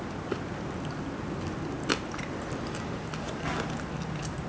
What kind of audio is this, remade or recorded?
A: recorded